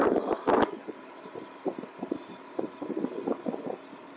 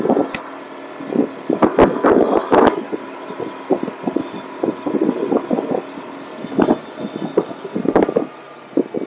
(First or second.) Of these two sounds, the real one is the second